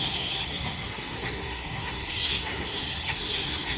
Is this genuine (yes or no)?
no